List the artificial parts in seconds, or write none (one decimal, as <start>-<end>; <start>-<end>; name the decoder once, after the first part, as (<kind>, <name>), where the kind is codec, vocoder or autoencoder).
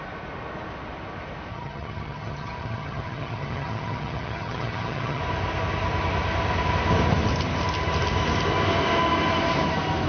1.5-5.2 (vocoder, HiFi-GAN)